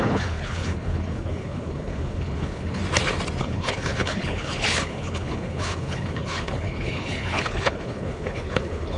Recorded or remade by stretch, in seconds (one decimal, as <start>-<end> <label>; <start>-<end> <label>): 0.0-2.8 remade; 2.8-3.4 recorded; 3.4-9.0 remade